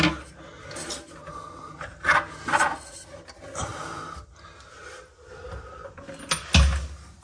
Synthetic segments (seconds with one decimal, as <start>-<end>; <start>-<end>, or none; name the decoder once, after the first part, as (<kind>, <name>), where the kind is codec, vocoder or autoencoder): none